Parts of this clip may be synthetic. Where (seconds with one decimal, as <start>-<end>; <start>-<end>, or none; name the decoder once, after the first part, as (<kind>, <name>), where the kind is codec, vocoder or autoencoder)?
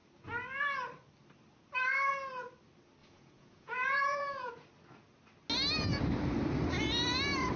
3.0-4.5 (vocoder, Vocos)